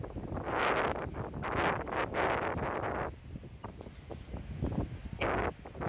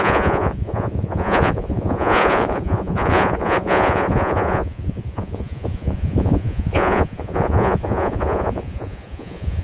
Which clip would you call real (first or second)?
first